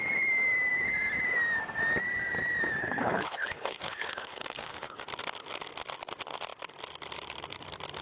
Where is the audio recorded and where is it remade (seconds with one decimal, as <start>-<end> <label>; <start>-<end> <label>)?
0.0-2.8 recorded; 2.8-5.0 remade; 5.0-8.0 recorded